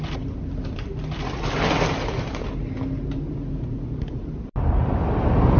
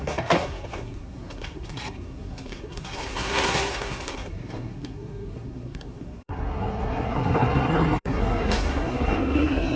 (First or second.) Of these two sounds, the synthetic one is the second